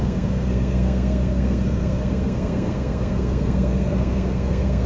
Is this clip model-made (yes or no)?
yes